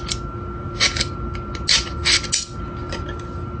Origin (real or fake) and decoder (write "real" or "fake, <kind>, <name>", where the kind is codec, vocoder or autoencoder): real